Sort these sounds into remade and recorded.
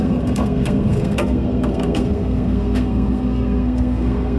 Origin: remade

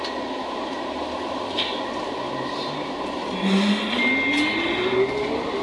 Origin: recorded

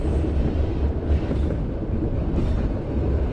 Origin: recorded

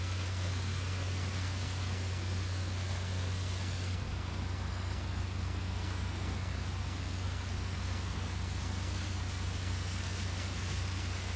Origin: remade